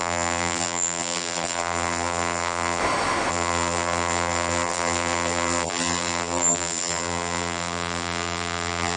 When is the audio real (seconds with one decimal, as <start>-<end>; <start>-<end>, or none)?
2.8-3.3